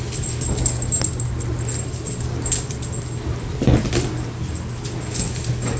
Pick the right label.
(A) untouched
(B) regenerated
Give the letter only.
A